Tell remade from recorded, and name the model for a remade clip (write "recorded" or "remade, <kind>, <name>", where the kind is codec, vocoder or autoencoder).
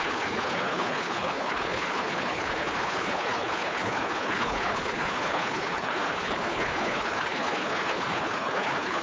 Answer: remade, codec, HILCodec